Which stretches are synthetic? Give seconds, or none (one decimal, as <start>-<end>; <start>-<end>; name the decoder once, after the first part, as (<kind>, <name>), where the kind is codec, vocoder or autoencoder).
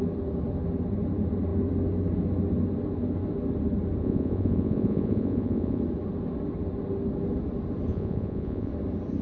4.0-5.8 (vocoder, Vocos); 7.9-8.7